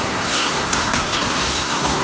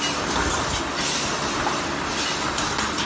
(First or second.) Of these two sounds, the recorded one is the second